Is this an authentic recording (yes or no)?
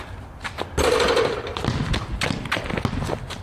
yes